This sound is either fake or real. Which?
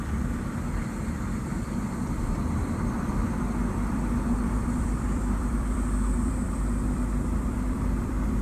fake